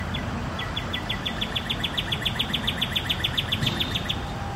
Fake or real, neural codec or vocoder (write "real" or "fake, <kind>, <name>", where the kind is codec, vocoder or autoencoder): real